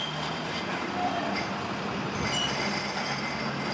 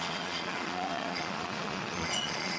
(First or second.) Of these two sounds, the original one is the first